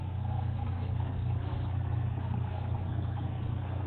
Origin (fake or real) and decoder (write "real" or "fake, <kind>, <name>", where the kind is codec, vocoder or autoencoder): fake, codec, SNAC